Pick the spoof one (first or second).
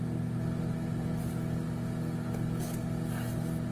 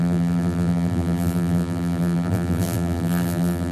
second